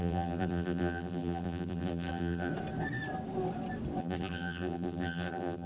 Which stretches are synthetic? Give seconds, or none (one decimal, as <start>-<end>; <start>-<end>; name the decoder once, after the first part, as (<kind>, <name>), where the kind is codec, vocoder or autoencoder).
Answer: 0.0-2.5 (vocoder, BigVGAN v2); 4.0-5.7